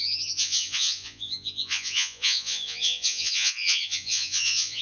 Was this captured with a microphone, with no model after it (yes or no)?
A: no